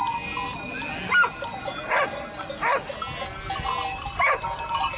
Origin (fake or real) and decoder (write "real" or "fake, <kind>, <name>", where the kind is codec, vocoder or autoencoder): real